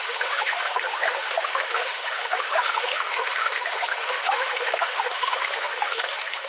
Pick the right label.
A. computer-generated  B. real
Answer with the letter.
A